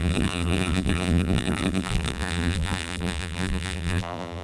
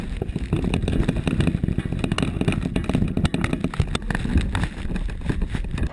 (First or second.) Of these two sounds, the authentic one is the second